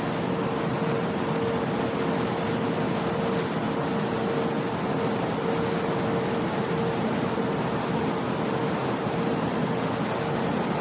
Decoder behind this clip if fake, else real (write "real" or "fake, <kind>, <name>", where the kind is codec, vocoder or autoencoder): real